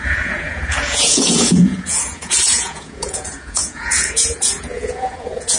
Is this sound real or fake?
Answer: fake